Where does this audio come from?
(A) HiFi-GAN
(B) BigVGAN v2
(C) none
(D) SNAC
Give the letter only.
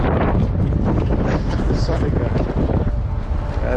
C